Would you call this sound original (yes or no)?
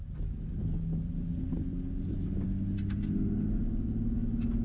yes